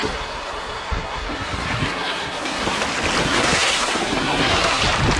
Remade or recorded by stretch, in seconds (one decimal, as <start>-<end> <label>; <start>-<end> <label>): 0.0-2.8 remade; 2.8-3.2 recorded; 3.2-4.8 remade; 4.8-5.2 recorded